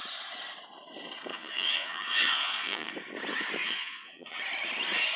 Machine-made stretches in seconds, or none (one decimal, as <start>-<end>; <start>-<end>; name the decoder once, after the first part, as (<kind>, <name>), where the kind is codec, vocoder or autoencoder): 1.3-2.9 (vocoder, Vocos); 3.6-4.4